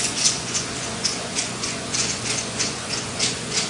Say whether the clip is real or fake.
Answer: fake